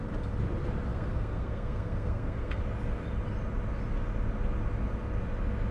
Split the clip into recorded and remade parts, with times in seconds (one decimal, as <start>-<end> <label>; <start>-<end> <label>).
0.0-0.9 recorded; 0.9-2.6 remade; 2.6-5.7 recorded